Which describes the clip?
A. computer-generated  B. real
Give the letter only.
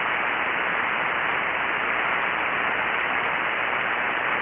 B